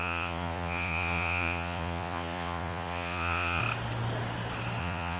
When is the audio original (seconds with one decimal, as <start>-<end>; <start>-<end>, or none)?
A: 3.6-4.8